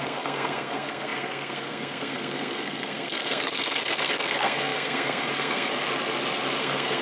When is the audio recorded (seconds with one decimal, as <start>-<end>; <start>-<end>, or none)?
5.7-6.6